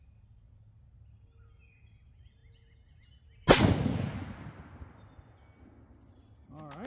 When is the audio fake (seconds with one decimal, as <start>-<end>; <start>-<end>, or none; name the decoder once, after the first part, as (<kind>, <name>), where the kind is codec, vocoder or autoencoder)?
none